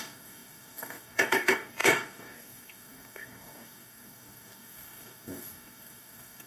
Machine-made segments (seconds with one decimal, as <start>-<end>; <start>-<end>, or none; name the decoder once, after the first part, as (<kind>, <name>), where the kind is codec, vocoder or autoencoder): 0.0-6.5 (codec, DAC)